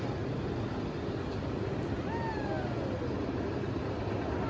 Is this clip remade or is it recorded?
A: recorded